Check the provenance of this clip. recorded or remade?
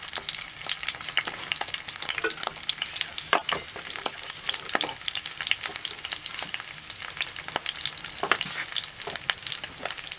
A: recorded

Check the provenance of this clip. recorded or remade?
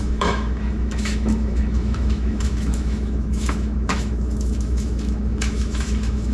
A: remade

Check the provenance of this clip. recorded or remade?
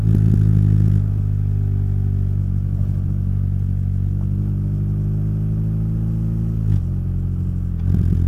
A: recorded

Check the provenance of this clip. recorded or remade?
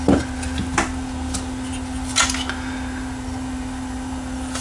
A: recorded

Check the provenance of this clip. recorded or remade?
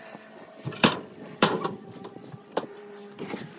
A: remade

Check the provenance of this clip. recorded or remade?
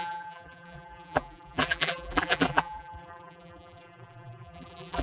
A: remade